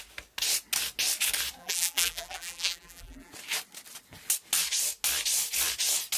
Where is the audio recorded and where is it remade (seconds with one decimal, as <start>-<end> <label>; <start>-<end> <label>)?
0.0-1.6 recorded; 1.6-3.3 remade; 3.3-6.2 recorded